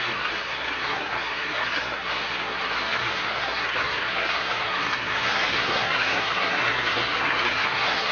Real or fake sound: fake